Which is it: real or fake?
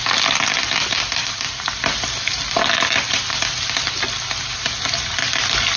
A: real